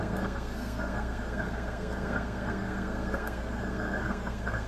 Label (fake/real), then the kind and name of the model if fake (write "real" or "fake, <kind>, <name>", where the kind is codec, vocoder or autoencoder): fake, codec, SNAC